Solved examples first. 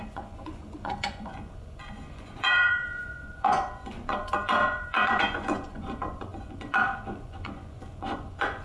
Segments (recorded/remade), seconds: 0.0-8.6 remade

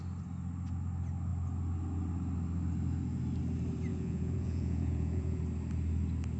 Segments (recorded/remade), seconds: 0.0-3.9 recorded; 3.9-5.4 remade; 5.4-6.4 recorded

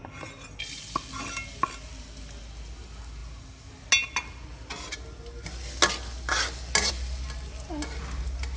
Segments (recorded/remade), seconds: 0.0-8.6 recorded

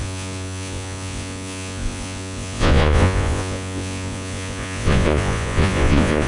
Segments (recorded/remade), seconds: 0.0-6.3 remade

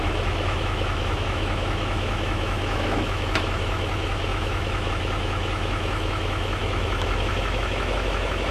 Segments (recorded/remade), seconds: 0.0-8.5 remade